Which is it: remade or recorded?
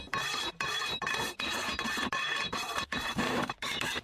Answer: remade